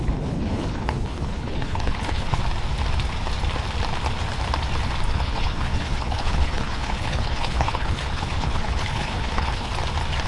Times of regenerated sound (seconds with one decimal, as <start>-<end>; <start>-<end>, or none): 0.0-2.4; 5.1-9.7